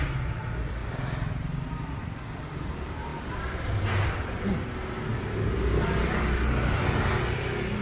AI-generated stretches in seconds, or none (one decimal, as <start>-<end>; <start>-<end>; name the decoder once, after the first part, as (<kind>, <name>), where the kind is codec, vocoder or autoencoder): none